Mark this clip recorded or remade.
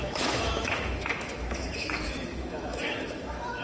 remade